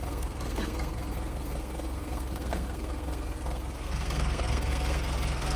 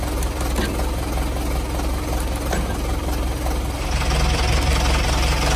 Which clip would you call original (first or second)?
second